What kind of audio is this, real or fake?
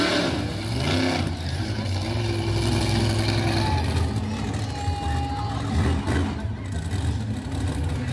real